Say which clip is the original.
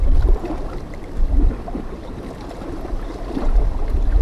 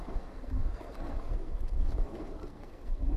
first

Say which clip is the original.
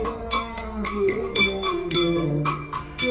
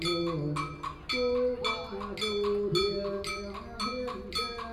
second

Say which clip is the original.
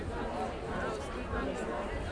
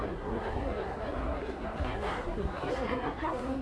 first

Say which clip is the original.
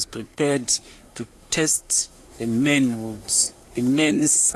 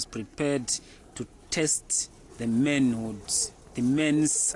second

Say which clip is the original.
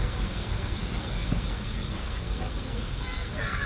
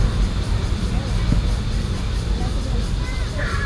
second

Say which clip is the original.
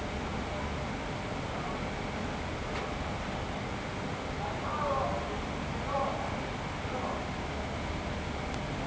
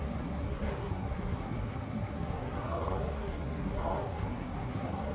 first